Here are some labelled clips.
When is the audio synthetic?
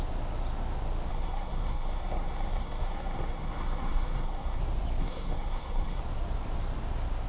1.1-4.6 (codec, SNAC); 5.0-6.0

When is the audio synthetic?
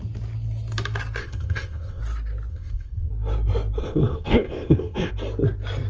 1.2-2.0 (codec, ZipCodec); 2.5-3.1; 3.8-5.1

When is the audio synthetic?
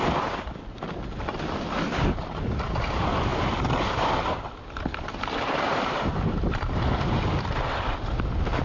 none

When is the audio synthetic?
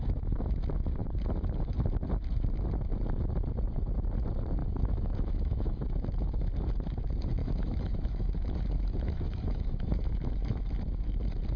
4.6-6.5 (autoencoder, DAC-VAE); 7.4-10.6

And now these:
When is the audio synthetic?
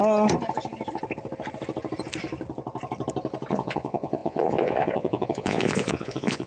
3.5-6.5 (vocoder, Vocos)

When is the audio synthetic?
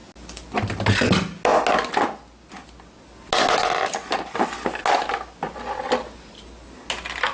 none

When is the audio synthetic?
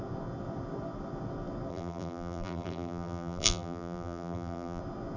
1.7-4.8 (vocoder, BigVGAN v2)